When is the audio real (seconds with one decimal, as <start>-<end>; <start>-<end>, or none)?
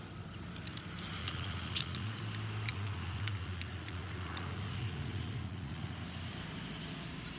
0.0-1.2; 2.2-2.7; 5.9-7.4